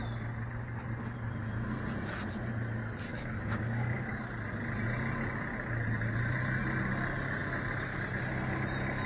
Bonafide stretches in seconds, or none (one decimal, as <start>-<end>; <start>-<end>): 0.0-3.1; 4.1-9.1